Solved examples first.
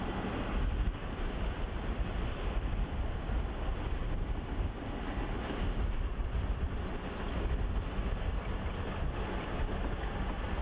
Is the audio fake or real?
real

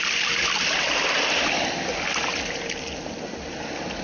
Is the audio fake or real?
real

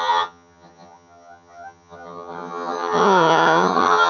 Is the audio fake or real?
fake